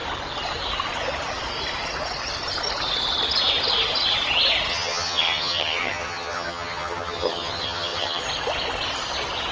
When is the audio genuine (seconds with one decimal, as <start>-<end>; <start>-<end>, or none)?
0.0-4.7; 8.2-9.5